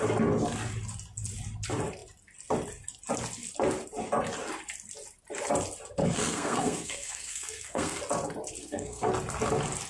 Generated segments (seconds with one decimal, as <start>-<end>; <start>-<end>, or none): 6.0-8.0; 8.6-9.1